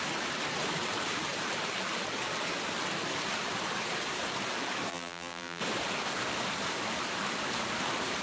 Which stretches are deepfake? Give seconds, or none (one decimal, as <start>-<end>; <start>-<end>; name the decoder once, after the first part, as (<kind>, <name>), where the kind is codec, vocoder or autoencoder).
4.9-5.6 (vocoder, BigVGAN v2)